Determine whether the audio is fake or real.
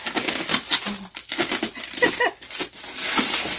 real